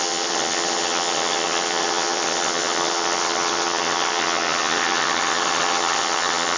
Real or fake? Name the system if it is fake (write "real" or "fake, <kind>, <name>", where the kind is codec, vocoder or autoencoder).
fake, vocoder, HiFi-GAN